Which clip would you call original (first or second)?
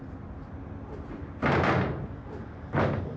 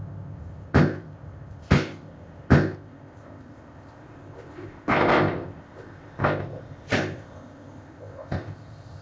first